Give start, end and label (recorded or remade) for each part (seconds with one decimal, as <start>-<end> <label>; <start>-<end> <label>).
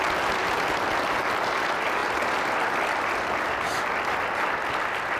0.0-5.2 recorded